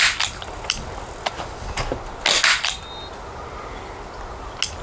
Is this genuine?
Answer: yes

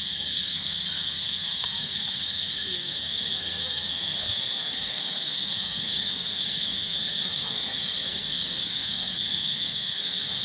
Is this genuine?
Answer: no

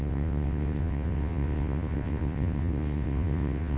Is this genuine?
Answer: no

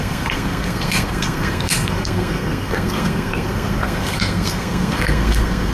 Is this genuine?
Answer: no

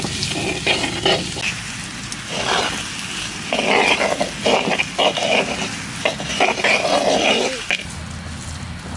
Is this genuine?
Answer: yes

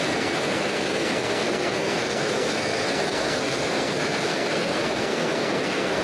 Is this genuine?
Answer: no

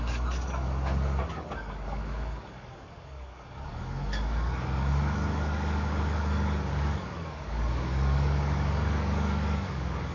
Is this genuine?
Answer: no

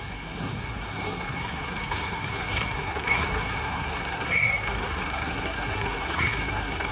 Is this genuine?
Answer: no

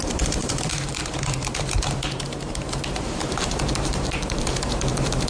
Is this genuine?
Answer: no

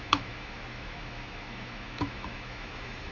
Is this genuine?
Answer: no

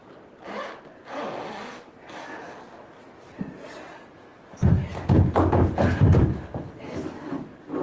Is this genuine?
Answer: yes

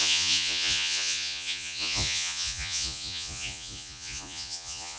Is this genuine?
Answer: no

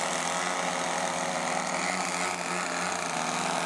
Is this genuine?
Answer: yes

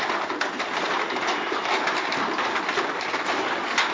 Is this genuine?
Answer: yes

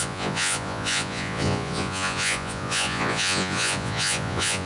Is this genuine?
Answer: no